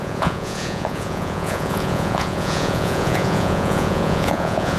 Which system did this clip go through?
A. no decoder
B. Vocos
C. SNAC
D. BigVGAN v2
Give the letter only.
B